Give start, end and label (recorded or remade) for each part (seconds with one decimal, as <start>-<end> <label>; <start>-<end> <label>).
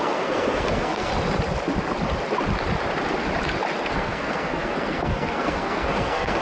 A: 0.0-1.1 remade; 1.1-3.9 recorded; 3.9-6.4 remade